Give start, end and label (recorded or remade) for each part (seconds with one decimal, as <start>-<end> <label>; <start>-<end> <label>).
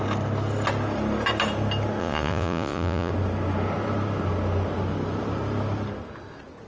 0.0-2.0 recorded; 2.0-3.1 remade; 3.1-6.7 recorded